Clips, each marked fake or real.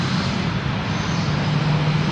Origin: real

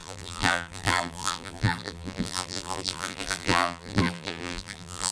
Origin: fake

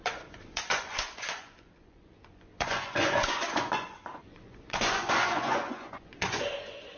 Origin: fake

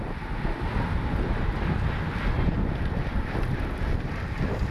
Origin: real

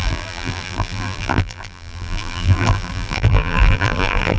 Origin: fake